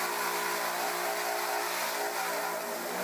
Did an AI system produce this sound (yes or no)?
no